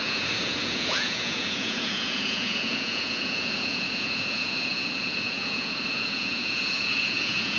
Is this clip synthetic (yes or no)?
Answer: yes